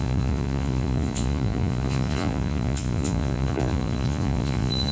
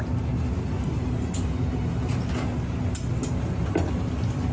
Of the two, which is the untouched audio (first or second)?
second